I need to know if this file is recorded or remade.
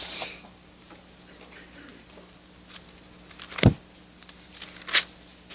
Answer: recorded